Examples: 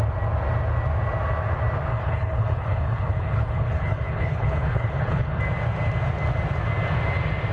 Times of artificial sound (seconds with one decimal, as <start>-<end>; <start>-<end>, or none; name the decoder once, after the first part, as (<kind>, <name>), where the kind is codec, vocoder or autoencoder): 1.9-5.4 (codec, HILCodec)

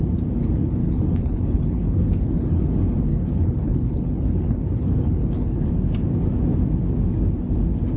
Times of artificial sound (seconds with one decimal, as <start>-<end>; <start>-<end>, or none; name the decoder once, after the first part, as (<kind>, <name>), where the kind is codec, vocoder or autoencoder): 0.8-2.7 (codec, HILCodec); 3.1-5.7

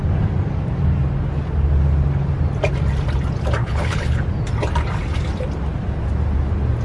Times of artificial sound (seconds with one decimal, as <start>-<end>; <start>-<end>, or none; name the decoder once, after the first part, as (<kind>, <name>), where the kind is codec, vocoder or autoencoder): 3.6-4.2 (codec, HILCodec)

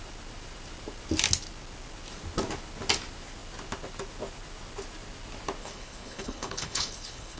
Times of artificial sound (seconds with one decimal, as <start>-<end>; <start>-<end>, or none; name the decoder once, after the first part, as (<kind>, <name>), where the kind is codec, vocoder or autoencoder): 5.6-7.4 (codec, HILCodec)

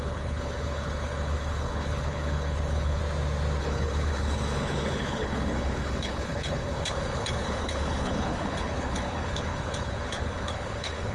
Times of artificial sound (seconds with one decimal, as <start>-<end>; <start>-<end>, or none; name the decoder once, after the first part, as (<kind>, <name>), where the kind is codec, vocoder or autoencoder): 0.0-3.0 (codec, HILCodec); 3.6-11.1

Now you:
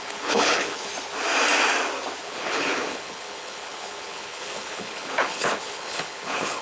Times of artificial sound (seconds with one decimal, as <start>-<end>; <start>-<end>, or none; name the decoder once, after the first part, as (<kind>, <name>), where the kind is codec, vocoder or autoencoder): 0.0-0.9 (codec, HILCodec); 2.2-6.6